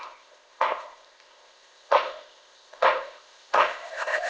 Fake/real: fake